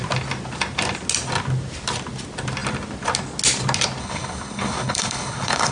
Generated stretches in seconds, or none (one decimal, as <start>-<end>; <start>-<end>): 4.0-5.7